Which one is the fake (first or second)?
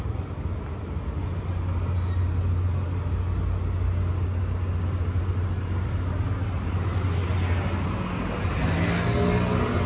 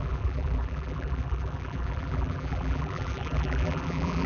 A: second